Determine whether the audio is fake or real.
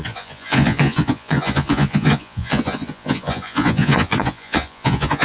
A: fake